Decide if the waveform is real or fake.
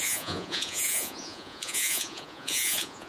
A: fake